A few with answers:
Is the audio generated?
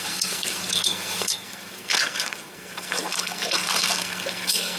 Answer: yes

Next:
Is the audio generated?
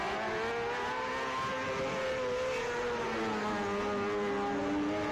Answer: no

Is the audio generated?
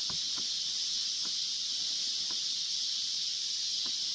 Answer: no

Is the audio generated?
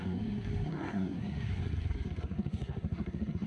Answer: yes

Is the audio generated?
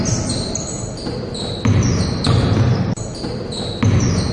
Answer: no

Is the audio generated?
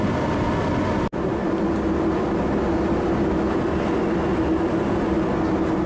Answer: no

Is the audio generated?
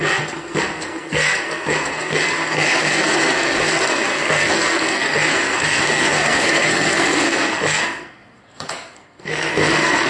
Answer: yes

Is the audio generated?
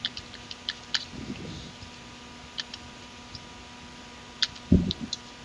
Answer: no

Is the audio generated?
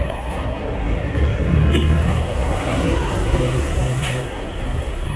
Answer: yes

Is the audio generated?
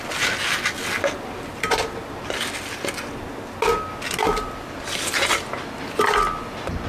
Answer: no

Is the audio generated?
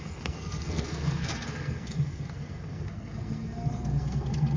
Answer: yes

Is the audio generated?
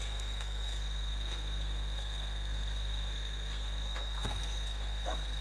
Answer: yes